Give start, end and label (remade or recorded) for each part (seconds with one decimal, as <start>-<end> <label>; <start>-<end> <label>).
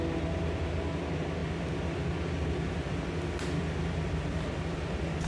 0.0-5.3 recorded